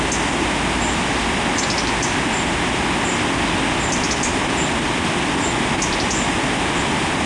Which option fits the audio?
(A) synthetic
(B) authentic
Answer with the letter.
B